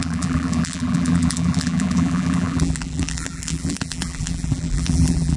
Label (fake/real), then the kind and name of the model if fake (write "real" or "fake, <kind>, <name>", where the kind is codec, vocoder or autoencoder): fake, vocoder, BigVGAN v2